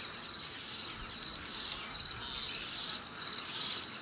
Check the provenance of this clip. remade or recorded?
recorded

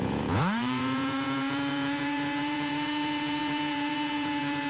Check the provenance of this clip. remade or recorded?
remade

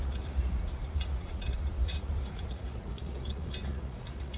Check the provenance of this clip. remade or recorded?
remade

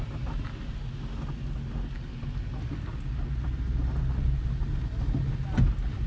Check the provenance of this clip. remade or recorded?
recorded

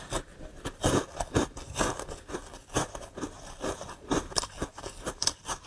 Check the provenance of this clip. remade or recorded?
recorded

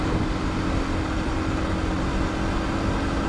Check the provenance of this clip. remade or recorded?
recorded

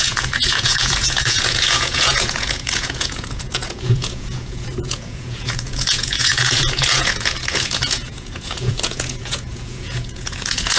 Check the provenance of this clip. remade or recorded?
remade